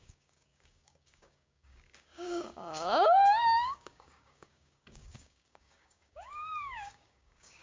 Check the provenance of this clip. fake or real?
fake